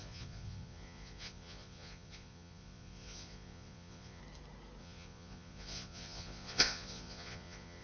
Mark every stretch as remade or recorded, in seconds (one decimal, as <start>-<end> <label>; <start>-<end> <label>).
0.0-4.2 remade; 4.2-4.8 recorded; 4.8-7.8 remade